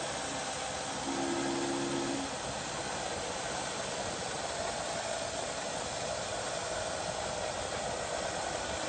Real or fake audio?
real